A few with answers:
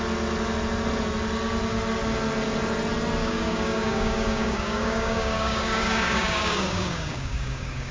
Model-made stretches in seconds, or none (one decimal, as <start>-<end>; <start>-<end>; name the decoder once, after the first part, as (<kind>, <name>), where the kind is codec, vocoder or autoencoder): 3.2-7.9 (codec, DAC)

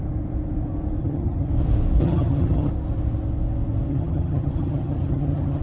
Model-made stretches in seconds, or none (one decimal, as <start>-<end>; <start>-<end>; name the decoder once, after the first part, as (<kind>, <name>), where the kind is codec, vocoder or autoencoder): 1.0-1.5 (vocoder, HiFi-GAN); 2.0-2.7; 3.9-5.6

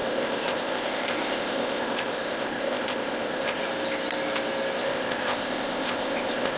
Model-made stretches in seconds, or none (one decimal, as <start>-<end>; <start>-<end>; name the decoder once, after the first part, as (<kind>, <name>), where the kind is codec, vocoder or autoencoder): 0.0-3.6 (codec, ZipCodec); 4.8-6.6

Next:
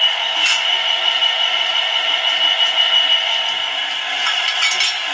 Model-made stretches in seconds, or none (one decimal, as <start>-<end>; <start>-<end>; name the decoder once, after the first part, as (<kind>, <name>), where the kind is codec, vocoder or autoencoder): none

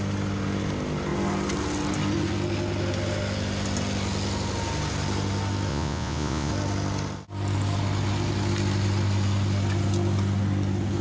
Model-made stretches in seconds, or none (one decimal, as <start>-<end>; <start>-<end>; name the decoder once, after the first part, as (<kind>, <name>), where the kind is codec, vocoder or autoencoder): 5.7-6.5 (vocoder, Vocos)

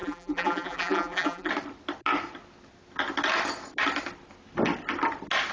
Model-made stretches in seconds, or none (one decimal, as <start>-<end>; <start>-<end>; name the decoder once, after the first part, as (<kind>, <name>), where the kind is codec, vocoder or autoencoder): 0.0-1.5 (vocoder, BigVGAN v2)

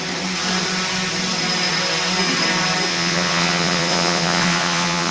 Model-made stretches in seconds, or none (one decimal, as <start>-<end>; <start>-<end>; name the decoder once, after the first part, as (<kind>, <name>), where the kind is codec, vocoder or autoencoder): 2.9-5.1 (vocoder, Vocos)

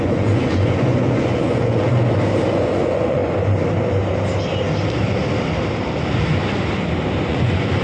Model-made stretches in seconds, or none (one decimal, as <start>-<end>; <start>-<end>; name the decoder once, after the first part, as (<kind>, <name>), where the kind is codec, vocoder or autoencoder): 0.0-1.9 (vocoder, Vocos); 2.5-3.2; 7.3-7.8